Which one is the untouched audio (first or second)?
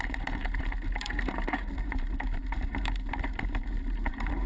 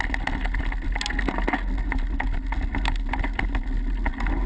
second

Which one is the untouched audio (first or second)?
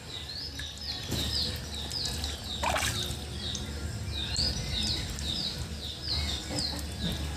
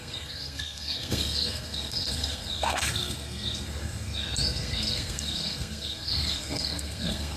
first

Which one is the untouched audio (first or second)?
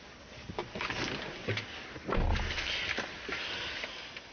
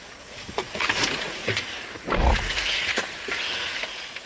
first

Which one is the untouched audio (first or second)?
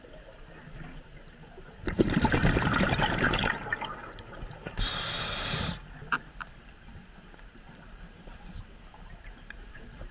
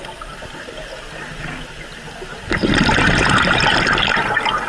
second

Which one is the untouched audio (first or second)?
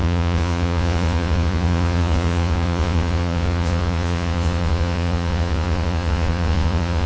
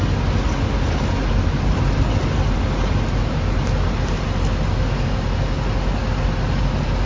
second